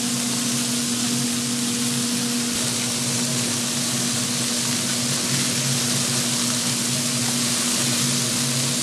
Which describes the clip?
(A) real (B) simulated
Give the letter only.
A